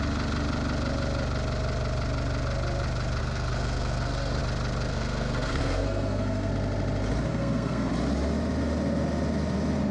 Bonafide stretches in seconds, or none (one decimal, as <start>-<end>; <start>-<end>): 0.0-3.2; 4.4-4.9; 6.5-7.3; 7.9-9.9